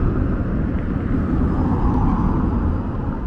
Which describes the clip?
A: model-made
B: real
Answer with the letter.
B